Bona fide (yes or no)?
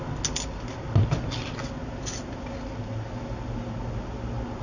yes